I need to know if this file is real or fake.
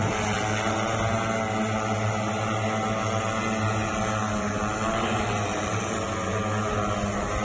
real